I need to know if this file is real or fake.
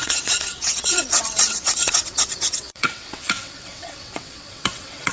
fake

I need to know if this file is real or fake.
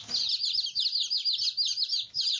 real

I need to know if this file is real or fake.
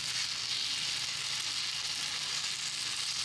real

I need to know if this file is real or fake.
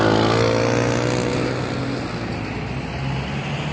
real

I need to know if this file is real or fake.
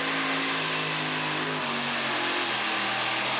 real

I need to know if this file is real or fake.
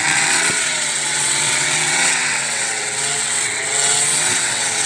fake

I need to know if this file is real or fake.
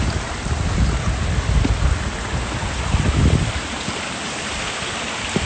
real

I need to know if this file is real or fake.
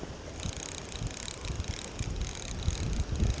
real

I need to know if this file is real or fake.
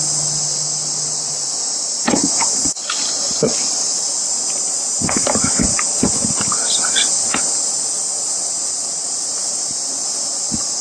real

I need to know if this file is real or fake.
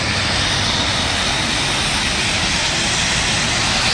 real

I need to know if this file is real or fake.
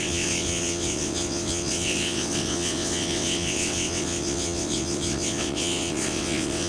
fake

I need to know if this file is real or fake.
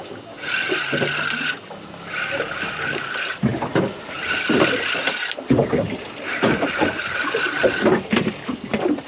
real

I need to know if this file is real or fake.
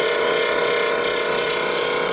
fake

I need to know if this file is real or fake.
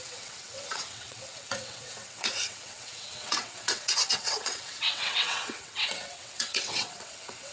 fake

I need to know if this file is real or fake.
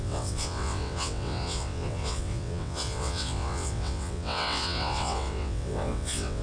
fake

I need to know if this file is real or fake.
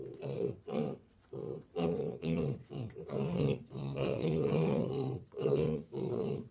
fake